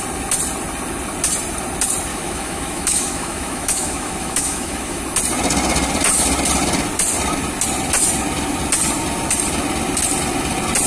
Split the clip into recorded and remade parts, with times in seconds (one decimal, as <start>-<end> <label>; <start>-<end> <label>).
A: 0.0-2.1 recorded; 2.1-5.0 remade; 5.0-10.9 recorded